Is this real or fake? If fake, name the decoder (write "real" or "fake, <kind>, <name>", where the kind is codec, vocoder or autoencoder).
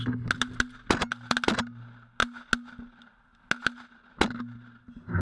real